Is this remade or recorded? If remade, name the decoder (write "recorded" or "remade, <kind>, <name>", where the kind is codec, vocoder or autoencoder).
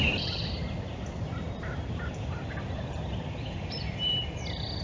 remade, vocoder, BigVGAN v2